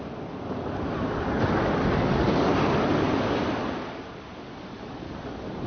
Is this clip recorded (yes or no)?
yes